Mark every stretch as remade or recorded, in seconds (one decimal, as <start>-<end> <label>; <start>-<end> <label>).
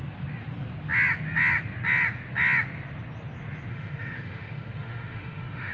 0.0-3.7 recorded; 3.7-5.7 remade